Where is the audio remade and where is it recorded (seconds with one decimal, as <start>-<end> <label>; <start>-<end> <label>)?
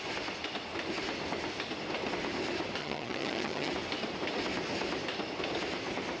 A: 0.0-2.8 recorded; 2.8-3.7 remade; 3.7-6.2 recorded